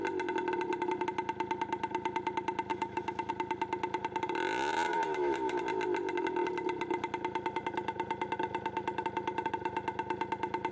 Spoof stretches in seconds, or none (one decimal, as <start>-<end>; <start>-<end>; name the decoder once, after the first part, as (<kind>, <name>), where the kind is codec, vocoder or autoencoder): 2.7-3.3 (autoencoder, DAC-VAE); 4.9-5.6